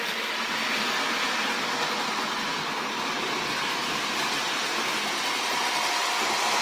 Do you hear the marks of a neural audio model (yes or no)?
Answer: no